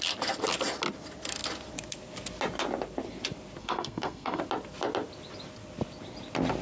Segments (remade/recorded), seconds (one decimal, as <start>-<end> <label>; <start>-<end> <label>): 0.0-3.6 recorded; 3.6-4.4 remade; 4.4-6.6 recorded